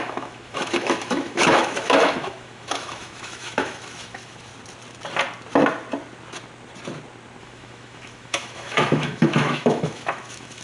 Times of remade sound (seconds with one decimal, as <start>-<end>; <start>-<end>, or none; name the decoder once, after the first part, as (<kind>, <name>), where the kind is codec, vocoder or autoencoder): 0.0-4.5 (autoencoder, DAC-VAE); 7.4-10.6

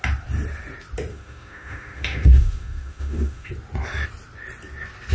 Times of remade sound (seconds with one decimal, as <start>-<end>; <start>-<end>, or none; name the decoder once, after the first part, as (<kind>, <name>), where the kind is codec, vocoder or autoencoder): 1.1-3.5 (autoencoder, DAC-VAE)

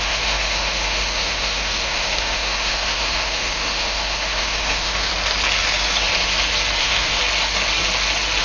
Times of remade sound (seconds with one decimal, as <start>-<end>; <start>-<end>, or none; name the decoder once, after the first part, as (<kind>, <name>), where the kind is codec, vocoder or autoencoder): 0.0-5.1 (autoencoder, DAC-VAE); 6.8-7.2

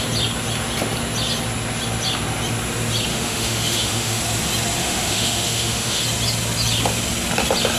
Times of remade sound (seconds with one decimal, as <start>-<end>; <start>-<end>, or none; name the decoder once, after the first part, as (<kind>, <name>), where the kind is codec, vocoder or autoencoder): 3.1-4.2 (autoencoder, DAC-VAE); 4.8-6.0

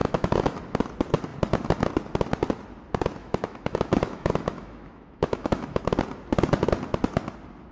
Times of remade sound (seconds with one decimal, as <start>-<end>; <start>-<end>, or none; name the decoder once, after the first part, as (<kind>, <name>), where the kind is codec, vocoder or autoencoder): 0.0-0.6 (autoencoder, DAC-VAE); 3.2-5.8